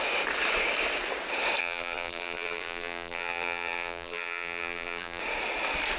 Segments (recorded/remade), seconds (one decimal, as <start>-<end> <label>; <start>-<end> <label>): 0.0-1.6 recorded; 1.6-5.2 remade; 5.2-6.0 recorded